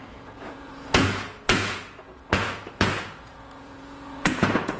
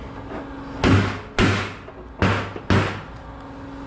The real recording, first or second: second